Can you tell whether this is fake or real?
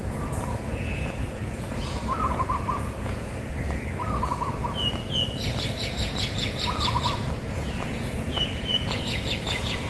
fake